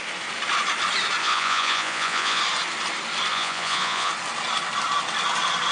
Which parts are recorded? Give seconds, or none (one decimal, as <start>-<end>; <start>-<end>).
0.0-1.2; 2.4-3.3; 4.1-5.7